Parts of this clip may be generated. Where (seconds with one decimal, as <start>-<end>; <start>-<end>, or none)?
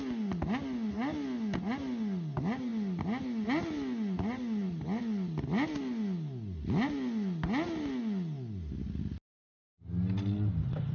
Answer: none